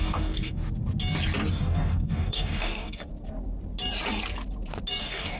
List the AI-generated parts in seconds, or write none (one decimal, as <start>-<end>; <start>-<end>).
0.0-0.6; 1.5-3.1; 5.0-5.4